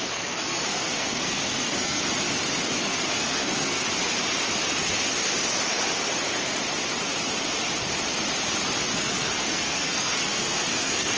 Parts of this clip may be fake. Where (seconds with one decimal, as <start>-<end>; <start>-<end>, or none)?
0.0-2.0; 2.8-3.8; 9.0-11.2